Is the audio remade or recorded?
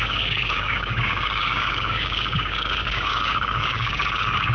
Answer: remade